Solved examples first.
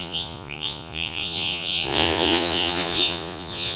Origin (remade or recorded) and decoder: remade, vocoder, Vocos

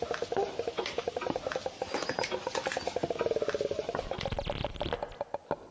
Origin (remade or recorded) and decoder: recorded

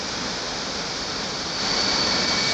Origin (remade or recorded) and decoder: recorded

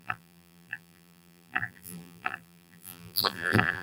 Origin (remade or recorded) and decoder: remade, vocoder, BigVGAN v2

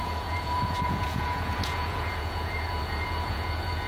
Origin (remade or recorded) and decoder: remade, vocoder, Vocos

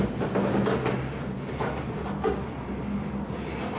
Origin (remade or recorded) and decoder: recorded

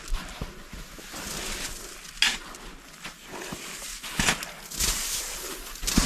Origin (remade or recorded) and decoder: recorded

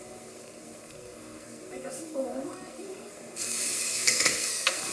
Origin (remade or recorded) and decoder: remade, codec, SNAC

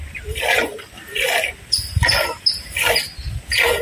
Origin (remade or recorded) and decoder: recorded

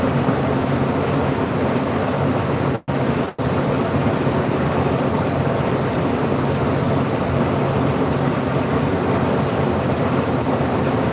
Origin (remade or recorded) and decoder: recorded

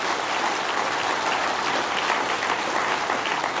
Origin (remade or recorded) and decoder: recorded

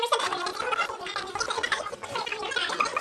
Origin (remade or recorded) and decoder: recorded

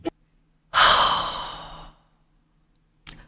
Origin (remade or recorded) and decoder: recorded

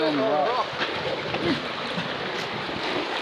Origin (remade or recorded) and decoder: recorded